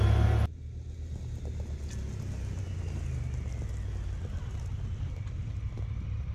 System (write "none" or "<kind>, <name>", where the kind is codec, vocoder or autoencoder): none